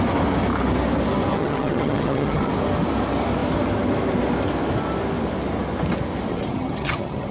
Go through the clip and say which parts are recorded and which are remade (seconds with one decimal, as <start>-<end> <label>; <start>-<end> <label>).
0.0-1.3 recorded; 1.3-2.5 remade; 2.5-6.3 recorded; 6.3-7.3 remade